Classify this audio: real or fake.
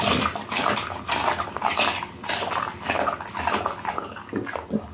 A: real